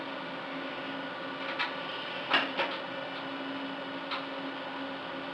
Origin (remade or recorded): recorded